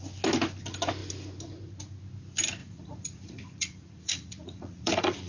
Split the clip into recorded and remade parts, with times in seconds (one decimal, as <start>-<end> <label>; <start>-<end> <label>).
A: 0.0-2.6 recorded; 2.6-5.3 remade